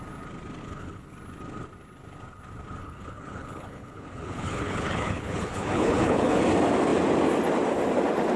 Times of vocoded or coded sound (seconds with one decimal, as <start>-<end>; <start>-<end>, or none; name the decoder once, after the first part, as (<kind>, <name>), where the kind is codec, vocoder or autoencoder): 0.6-1.1 (codec, HILCodec); 2.8-6.4